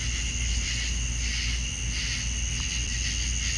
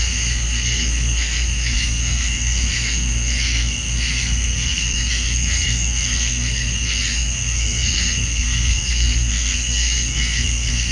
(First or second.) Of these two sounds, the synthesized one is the second